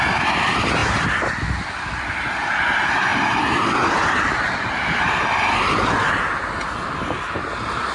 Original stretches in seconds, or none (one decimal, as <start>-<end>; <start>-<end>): 0.0-3.1; 4.7-7.9